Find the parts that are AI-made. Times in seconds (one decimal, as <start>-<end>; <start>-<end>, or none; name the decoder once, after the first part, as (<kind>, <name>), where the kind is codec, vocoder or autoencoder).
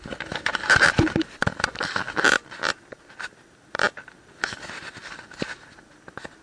none